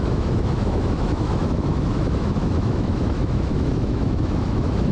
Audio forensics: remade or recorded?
remade